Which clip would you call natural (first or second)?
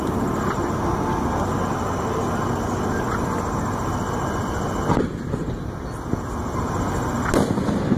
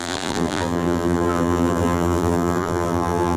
first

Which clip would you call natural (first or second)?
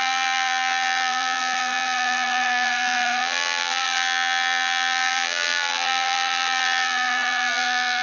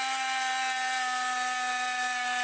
second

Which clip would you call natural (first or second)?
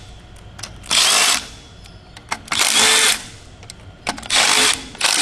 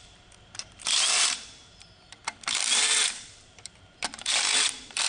first